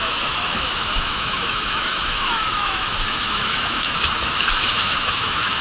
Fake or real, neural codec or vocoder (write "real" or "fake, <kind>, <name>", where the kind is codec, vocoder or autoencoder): fake, autoencoder, DAC-VAE